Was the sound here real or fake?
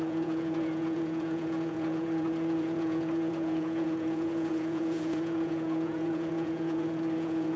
fake